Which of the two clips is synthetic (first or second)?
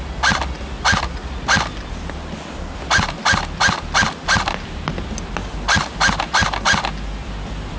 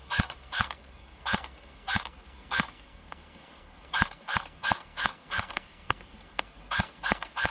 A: second